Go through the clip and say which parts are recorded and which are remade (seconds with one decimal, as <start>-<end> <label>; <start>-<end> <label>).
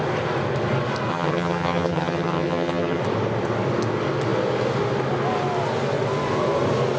0.0-1.1 recorded; 1.1-3.0 remade; 3.0-7.0 recorded